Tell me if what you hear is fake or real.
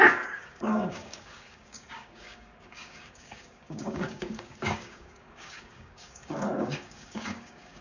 fake